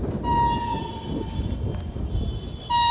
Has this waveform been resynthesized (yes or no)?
no